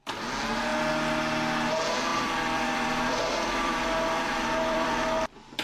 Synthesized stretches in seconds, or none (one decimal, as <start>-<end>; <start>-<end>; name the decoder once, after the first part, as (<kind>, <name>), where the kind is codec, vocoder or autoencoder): 2.1-4.9 (vocoder, BigVGAN v2)